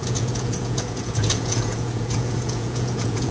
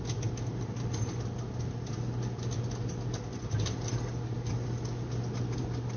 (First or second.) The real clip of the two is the second